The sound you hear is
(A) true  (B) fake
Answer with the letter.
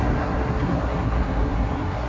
B